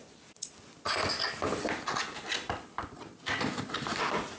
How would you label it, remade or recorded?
recorded